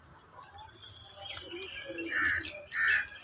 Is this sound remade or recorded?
recorded